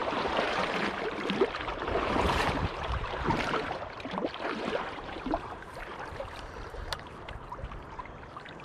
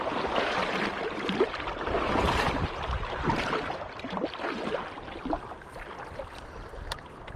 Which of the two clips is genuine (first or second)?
second